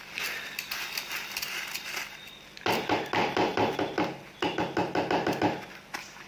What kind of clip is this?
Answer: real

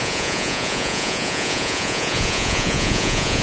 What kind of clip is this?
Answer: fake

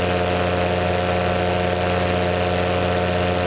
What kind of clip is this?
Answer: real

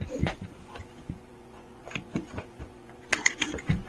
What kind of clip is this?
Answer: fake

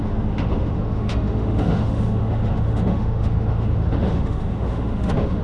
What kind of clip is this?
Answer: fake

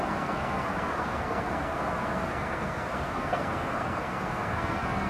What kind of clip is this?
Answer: fake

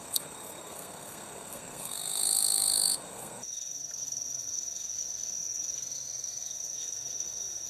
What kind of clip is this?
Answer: fake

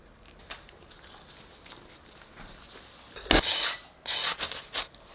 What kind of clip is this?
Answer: real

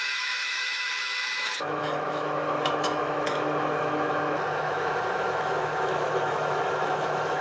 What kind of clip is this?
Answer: fake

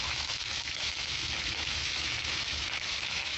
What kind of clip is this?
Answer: fake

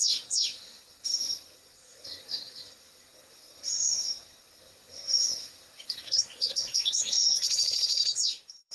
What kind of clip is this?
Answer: fake